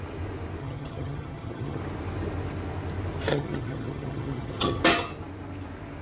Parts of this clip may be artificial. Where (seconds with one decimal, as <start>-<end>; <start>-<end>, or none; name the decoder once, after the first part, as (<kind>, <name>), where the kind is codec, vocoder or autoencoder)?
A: 0.6-1.8 (vocoder, HiFi-GAN); 3.3-4.8